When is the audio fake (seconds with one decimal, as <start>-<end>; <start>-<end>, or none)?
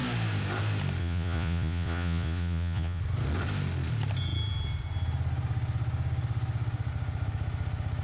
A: 1.0-3.0